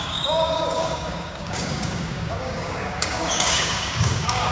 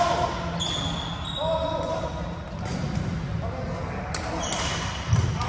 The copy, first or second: first